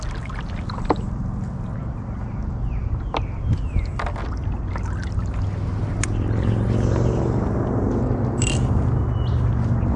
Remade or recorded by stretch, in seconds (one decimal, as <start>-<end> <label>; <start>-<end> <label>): 0.0-10.0 recorded